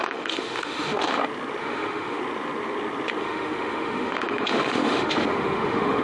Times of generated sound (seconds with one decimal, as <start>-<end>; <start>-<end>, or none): 0.0-1.2; 1.6-2.2; 3.2-6.0